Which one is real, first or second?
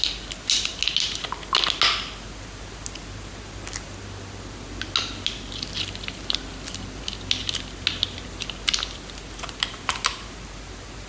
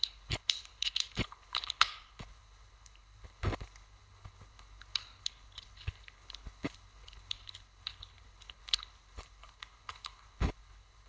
first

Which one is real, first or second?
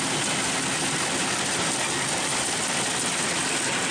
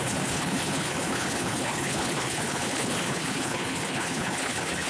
first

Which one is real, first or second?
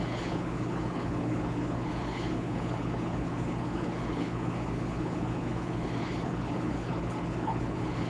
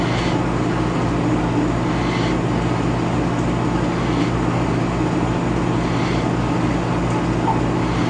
second